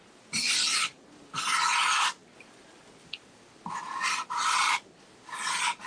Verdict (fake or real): real